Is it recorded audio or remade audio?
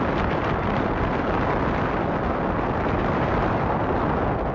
recorded